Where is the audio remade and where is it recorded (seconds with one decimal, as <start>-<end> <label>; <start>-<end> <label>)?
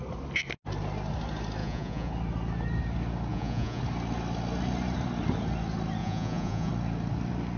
0.0-1.6 recorded; 1.6-2.1 remade; 2.1-3.3 recorded; 3.3-3.8 remade; 3.8-6.0 recorded; 6.0-6.7 remade; 6.7-7.6 recorded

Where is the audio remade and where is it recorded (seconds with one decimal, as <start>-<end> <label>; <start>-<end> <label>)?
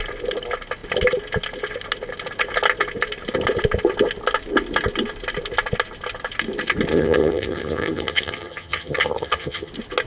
0.0-6.9 recorded; 6.9-9.7 remade; 9.7-10.1 recorded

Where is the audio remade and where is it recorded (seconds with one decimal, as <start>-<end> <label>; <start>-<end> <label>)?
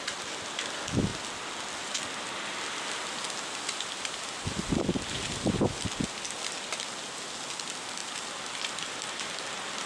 0.0-9.9 recorded